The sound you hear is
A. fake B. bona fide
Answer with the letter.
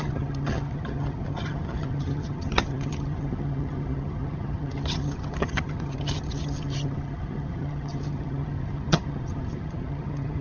A